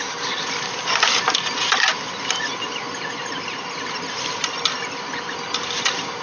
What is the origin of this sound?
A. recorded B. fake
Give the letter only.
A